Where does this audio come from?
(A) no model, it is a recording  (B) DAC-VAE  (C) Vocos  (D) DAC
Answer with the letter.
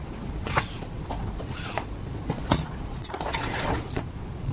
C